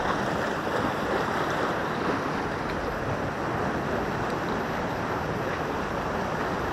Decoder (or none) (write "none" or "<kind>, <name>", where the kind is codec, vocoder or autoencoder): none